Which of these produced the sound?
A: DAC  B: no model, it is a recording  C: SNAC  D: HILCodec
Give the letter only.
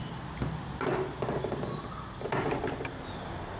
B